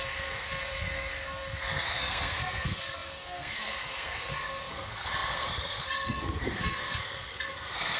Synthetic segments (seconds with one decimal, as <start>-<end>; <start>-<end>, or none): 0.0-8.0